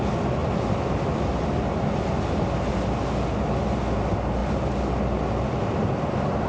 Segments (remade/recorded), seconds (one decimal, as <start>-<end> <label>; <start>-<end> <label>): 0.0-6.5 recorded